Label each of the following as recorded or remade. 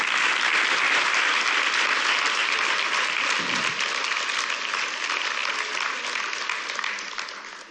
recorded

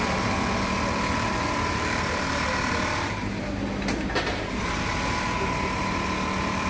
recorded